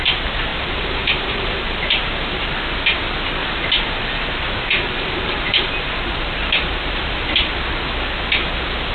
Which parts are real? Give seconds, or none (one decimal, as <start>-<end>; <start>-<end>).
0.0-0.5; 2.5-3.4; 7.5-8.9